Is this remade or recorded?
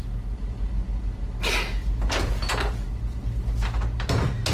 recorded